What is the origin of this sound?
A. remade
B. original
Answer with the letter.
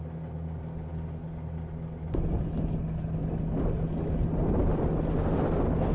B